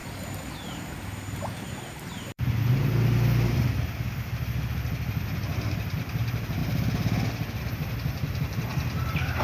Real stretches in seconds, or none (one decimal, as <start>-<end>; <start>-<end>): 0.0-0.5; 2.6-5.4; 6.6-7.6